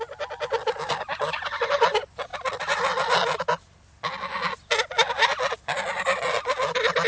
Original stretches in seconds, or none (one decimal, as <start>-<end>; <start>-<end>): 0.0-7.1